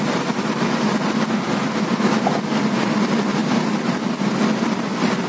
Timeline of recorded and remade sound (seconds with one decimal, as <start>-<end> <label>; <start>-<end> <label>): 0.0-5.3 recorded